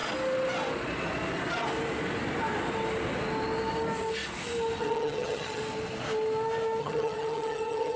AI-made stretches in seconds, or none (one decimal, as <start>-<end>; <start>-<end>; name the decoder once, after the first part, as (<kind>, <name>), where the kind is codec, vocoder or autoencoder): 4.8-5.6 (vocoder, HiFi-GAN); 6.8-8.0